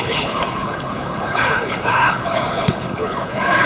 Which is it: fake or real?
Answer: fake